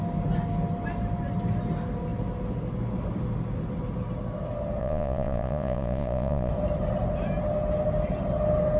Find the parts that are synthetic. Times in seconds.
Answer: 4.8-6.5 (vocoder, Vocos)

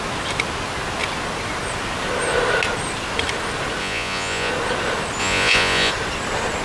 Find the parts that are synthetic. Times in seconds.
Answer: 3.8-4.5 (vocoder, Vocos); 5.2-5.9

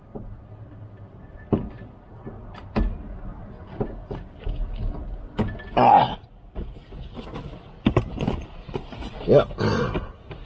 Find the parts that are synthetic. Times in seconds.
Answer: none

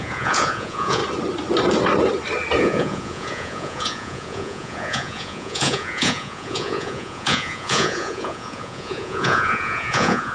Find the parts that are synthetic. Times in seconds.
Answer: 0.0-1.0 (vocoder, Vocos); 2.6-10.3